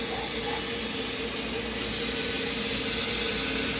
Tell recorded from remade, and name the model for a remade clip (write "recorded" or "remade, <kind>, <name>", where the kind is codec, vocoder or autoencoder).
recorded